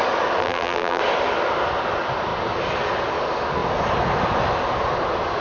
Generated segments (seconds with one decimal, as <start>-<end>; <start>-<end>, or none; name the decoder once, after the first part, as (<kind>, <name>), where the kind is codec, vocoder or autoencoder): 0.4-1.0 (vocoder, BigVGAN v2)